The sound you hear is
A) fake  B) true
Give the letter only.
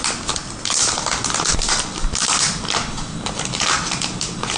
B